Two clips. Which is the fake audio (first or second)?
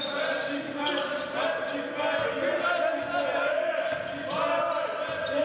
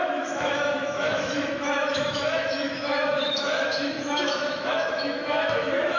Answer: second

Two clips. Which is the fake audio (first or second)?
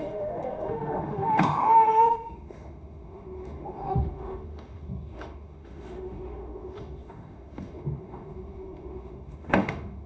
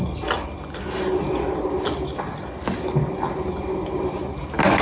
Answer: first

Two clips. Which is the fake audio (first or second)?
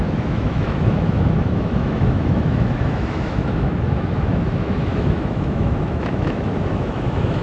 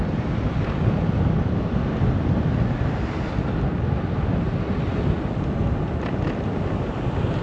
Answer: first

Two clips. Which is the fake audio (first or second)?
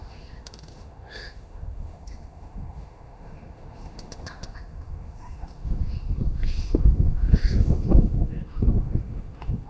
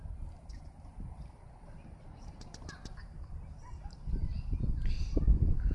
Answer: first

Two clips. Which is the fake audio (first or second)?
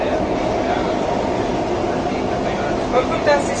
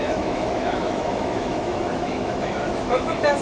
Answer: second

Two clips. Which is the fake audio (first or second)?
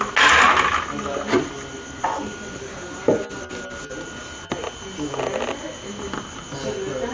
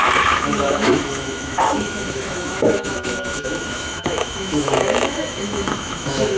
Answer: second